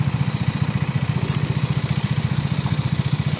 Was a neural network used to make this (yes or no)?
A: no